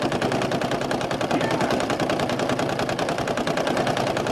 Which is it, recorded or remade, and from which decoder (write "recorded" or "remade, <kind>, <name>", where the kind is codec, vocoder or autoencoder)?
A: recorded